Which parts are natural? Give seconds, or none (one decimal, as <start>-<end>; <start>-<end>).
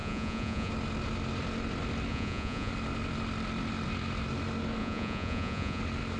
0.7-2.1; 2.7-4.8; 5.8-6.2